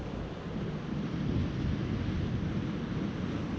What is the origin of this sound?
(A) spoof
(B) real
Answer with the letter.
B